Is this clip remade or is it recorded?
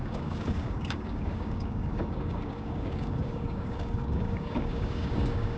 remade